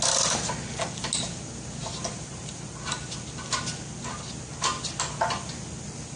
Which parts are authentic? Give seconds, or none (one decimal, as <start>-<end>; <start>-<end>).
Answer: 0.0-1.8; 2.6-6.2